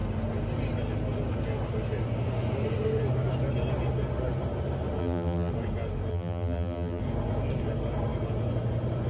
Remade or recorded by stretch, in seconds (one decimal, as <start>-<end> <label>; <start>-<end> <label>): 0.0-5.0 recorded; 5.0-5.5 remade; 5.5-6.1 recorded; 6.1-7.0 remade; 7.0-9.1 recorded